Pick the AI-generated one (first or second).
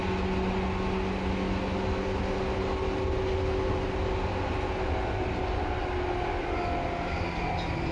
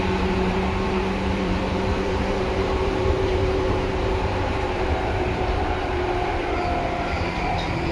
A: second